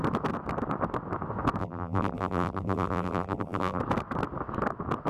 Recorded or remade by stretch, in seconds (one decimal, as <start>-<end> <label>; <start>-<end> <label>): 0.0-1.6 recorded; 1.6-3.8 remade; 3.8-5.1 recorded